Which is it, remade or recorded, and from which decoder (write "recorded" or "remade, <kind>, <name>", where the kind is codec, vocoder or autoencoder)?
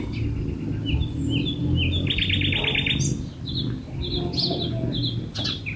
recorded